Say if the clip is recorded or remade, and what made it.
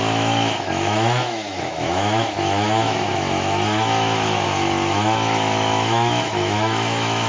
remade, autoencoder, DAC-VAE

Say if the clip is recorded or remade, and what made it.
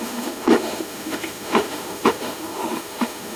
remade, autoencoder, DAC-VAE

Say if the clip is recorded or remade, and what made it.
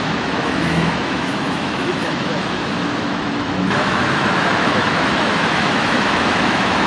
remade, autoencoder, DAC-VAE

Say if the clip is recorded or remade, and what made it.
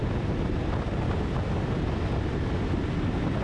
recorded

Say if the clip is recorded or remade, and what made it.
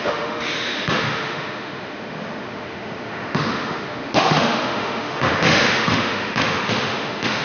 remade, autoencoder, DAC-VAE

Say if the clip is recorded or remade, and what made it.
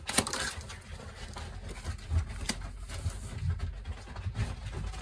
recorded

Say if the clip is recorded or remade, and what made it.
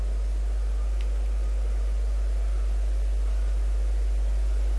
recorded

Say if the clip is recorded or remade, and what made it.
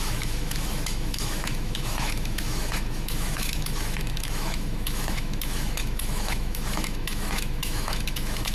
remade, autoencoder, DAC-VAE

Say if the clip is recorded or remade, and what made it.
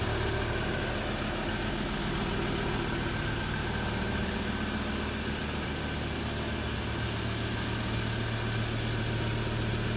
recorded